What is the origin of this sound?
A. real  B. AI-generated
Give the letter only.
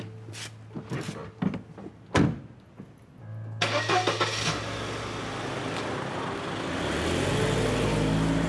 A